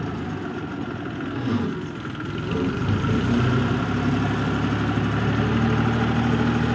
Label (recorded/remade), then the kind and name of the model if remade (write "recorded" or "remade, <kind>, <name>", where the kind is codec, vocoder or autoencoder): recorded